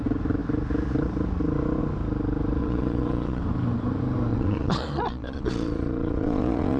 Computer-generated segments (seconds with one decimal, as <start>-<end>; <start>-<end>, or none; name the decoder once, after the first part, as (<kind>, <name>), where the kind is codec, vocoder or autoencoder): 2.6-3.4 (vocoder, Vocos); 4.3-6.8